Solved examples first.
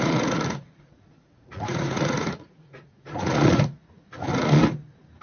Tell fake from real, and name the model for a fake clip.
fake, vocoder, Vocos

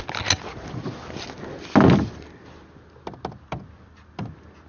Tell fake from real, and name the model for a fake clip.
real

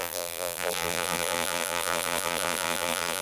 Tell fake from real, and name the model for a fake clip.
fake, vocoder, BigVGAN v2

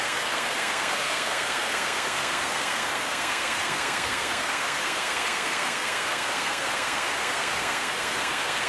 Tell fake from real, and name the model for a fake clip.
fake, codec, SNAC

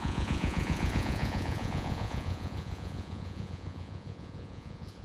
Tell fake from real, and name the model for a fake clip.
fake, vocoder, Vocos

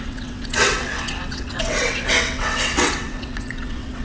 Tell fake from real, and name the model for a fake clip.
fake, vocoder, WaveNeXt